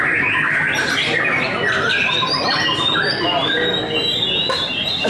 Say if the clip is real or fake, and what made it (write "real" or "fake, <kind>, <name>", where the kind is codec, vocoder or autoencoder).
real